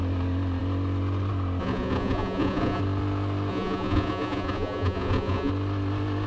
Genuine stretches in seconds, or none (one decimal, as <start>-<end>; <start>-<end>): 0.0-1.6; 2.8-3.5; 5.5-6.3